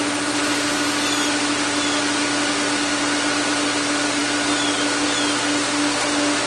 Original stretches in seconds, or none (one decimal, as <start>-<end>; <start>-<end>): 0.0-6.5